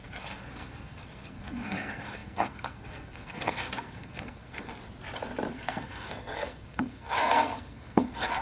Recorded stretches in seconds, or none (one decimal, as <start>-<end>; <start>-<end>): 4.7-5.5

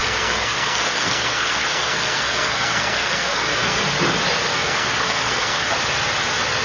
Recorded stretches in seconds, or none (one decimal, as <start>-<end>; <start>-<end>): 3.8-4.5; 5.7-6.6

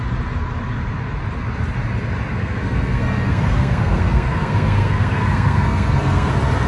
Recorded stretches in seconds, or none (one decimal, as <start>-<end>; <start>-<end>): 0.0-2.3; 6.3-6.7

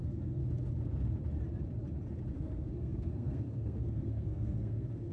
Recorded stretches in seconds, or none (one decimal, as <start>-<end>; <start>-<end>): 0.4-2.3

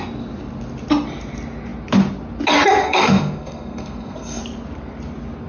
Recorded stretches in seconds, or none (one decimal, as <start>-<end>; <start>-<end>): 0.0-2.8; 4.4-5.5

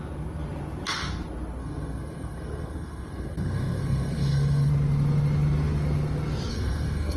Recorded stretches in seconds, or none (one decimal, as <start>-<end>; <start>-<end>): 0.0-1.6; 4.7-6.5

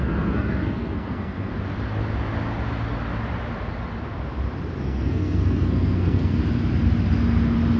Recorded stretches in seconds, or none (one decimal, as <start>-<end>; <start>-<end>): 1.5-4.8; 6.4-7.8

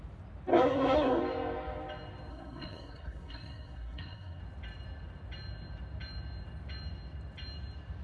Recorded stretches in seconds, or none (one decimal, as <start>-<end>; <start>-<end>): 0.0-0.5; 1.2-2.3; 4.4-8.0